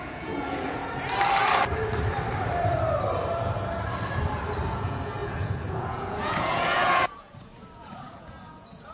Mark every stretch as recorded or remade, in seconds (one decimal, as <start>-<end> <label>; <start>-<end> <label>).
0.0-0.8 remade; 0.8-4.7 recorded; 4.7-8.9 remade